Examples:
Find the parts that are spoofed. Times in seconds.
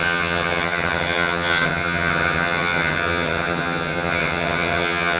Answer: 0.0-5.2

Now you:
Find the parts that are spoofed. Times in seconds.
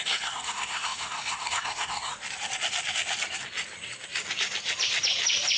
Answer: 0.0-2.1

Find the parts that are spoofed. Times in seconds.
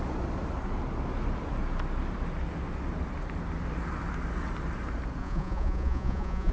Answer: 5.2-6.5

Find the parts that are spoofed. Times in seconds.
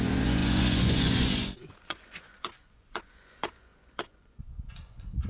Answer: 0.0-5.3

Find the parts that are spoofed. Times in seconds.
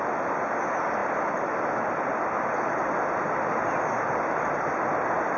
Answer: none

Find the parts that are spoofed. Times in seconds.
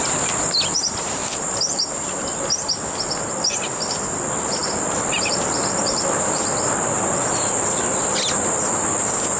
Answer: none